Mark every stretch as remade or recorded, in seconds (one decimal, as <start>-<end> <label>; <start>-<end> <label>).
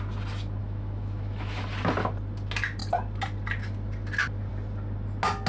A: 0.0-0.6 recorded; 0.6-1.6 remade; 1.6-5.5 recorded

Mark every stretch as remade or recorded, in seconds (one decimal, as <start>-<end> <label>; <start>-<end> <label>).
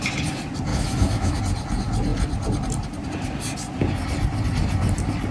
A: 0.0-0.7 recorded; 0.7-1.4 remade; 1.4-5.3 recorded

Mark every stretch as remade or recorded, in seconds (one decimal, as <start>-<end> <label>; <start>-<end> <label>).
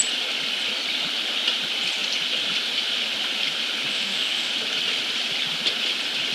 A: 0.0-3.9 recorded; 3.9-4.5 remade; 4.5-6.3 recorded